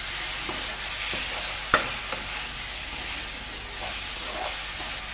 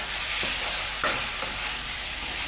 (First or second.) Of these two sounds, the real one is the first